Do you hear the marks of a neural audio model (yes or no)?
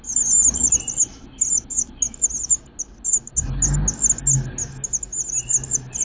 no